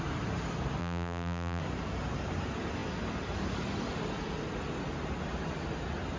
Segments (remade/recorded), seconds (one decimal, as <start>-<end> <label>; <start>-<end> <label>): 0.0-0.8 recorded; 0.8-1.6 remade; 1.6-6.2 recorded